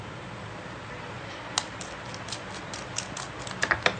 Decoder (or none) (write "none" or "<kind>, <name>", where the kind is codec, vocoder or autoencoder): none